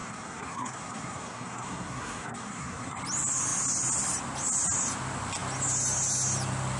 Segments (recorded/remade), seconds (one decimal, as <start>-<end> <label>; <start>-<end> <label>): 0.0-3.0 remade; 3.0-6.8 recorded